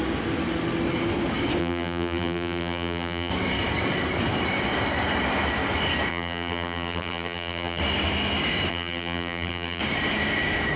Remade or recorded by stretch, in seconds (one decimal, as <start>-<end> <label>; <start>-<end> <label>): 0.0-1.6 recorded; 1.6-3.3 remade; 3.3-6.1 recorded; 6.1-7.8 remade; 7.8-8.7 recorded; 8.7-9.8 remade; 9.8-10.8 recorded